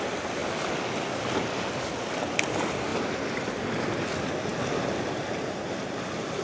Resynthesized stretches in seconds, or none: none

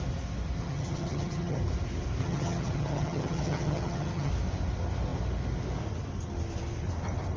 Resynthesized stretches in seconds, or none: 0.6-1.6 (vocoder, HiFi-GAN); 2.2-4.3

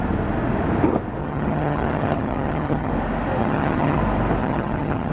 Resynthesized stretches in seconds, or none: 1.2-2.9 (vocoder, HiFi-GAN); 3.4-4.0; 4.4-5.1

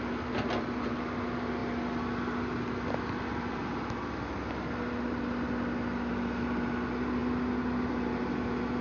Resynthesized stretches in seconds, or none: none

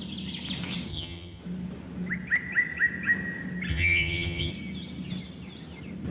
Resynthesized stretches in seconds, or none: 0.9-1.4 (vocoder, HiFi-GAN); 3.7-4.5